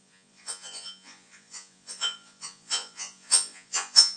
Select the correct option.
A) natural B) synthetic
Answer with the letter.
B